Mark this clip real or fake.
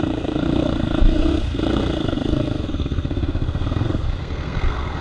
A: fake